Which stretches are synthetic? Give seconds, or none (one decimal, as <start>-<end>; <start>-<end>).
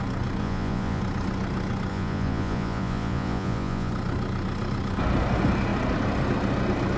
0.4-1.0; 1.9-3.9